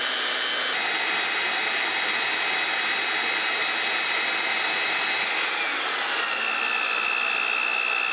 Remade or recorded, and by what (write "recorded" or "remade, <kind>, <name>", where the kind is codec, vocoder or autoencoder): recorded